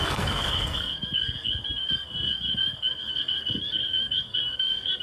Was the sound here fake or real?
fake